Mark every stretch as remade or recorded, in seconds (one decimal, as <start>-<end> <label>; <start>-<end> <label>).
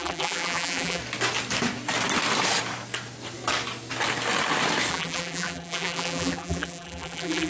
0.0-1.0 remade; 1.0-4.9 recorded; 4.9-7.5 remade